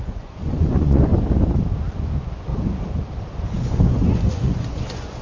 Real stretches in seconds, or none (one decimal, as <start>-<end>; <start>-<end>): 1.1-1.9; 2.5-3.5